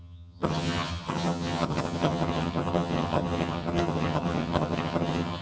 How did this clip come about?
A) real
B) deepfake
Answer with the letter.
B